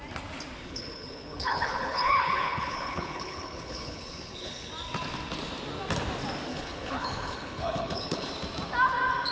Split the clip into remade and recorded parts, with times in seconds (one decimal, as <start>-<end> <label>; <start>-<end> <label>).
0.0-0.6 recorded; 0.6-4.7 remade; 4.7-6.5 recorded; 6.5-8.3 remade; 8.3-9.3 recorded